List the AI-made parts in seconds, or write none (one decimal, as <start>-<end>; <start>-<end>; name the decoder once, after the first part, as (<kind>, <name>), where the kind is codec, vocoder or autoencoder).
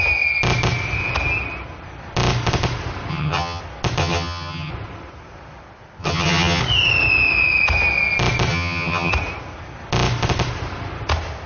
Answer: 3.1-3.6 (vocoder, HiFi-GAN); 4.0-4.7; 6.0-6.6; 8.5-9.1